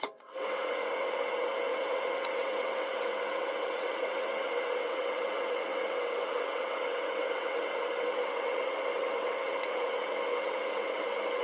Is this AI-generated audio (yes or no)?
yes